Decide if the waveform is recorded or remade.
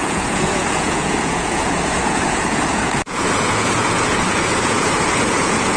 remade